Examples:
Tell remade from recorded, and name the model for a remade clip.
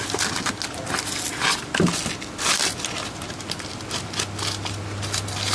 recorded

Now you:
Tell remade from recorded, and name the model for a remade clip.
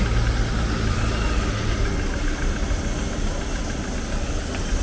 recorded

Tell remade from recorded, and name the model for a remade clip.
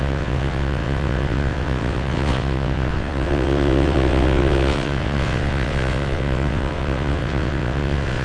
remade, vocoder, WaveNeXt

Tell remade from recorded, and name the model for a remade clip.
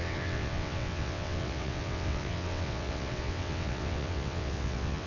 remade, vocoder, WaveNeXt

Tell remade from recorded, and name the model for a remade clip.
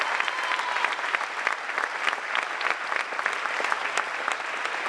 recorded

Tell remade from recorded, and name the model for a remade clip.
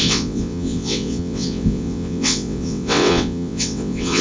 remade, vocoder, WaveNeXt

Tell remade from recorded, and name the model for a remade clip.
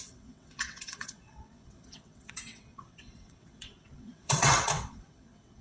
remade, vocoder, WaveNeXt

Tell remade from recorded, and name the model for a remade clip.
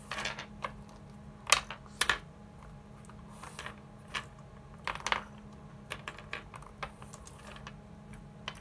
recorded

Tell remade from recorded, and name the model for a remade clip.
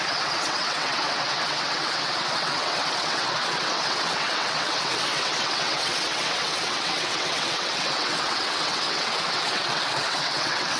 remade, vocoder, WaveNeXt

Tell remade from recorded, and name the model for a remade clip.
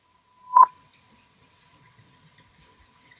remade, vocoder, WaveNeXt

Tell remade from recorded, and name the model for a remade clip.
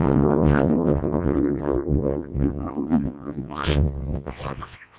remade, vocoder, WaveNeXt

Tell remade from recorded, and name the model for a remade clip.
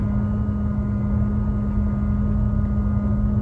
recorded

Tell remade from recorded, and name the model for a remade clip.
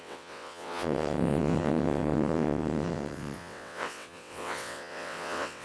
remade, vocoder, WaveNeXt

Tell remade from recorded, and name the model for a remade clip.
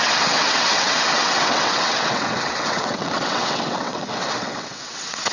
remade, vocoder, WaveNeXt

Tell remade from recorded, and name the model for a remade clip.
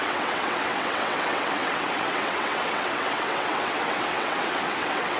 remade, vocoder, WaveNeXt